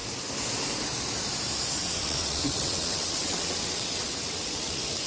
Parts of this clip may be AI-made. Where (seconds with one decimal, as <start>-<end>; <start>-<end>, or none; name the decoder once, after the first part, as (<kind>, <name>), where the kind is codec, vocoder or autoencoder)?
1.8-5.1 (vocoder, WaveNeXt)